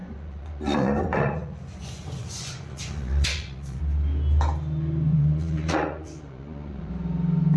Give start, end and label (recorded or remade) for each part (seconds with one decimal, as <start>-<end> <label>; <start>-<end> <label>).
0.0-3.8 remade; 3.8-5.1 recorded; 5.1-6.9 remade; 6.9-7.6 recorded